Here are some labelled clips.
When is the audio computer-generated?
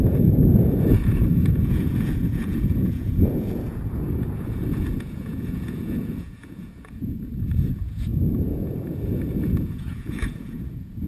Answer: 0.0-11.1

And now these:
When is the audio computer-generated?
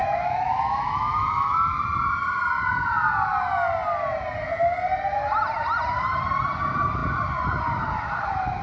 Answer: 0.0-1.8